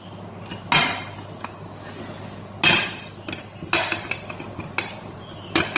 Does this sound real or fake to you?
real